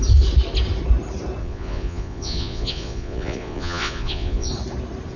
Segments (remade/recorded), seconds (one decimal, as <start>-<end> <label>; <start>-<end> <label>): 0.0-1.4 recorded; 1.4-4.5 remade; 4.5-5.2 recorded